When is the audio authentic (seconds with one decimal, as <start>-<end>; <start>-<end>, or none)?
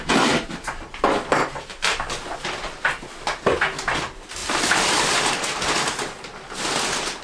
0.0-4.4; 5.1-7.2